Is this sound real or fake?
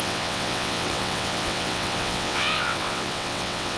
fake